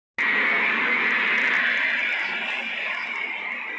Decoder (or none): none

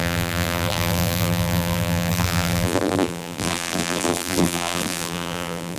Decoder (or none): vocoder, BigVGAN v2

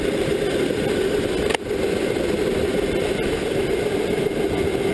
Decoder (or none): none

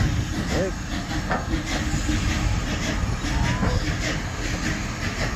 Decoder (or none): none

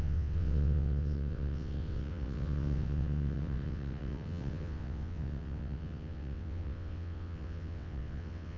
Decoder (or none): vocoder, WaveNeXt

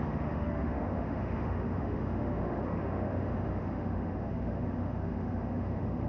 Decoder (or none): autoencoder, DAC-VAE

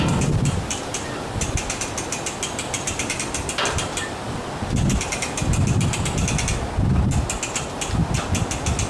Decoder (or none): none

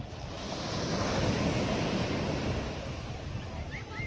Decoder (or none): none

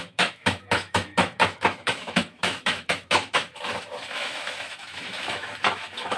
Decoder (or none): autoencoder, DAC-VAE